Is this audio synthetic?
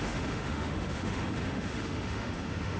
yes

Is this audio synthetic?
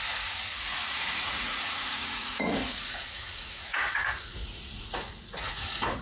yes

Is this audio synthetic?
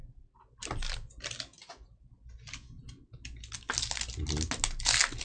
no